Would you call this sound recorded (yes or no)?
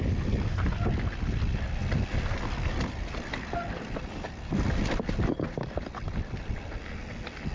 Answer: yes